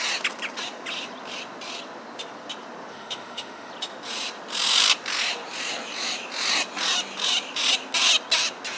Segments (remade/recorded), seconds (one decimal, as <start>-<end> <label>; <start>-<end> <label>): 0.0-2.9 recorded; 2.9-3.7 remade; 3.7-8.8 recorded